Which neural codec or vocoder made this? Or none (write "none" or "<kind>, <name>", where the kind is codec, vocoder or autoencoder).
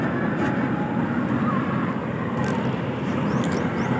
none